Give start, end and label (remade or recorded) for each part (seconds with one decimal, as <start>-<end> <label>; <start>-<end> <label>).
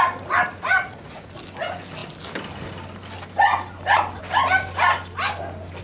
0.0-0.7 recorded; 0.7-1.3 remade; 1.3-5.8 recorded